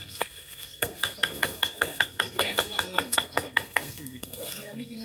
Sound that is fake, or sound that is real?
fake